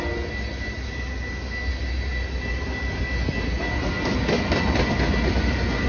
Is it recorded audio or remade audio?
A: recorded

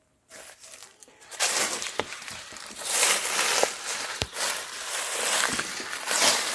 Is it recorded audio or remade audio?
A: remade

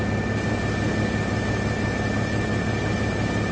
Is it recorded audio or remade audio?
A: recorded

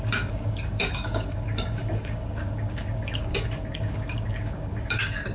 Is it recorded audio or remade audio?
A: remade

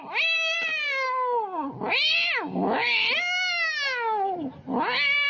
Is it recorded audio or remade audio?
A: recorded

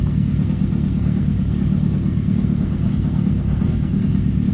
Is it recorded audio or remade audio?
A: remade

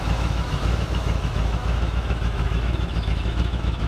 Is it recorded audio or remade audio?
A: remade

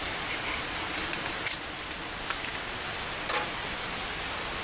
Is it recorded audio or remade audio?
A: recorded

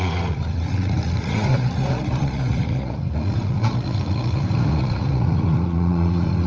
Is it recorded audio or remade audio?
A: remade